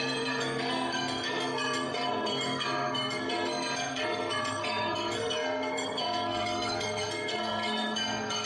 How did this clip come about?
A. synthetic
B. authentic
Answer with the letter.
A